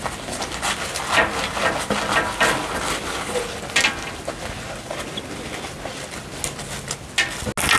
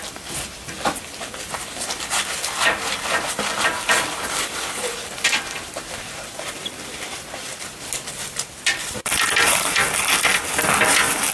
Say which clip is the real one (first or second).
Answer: first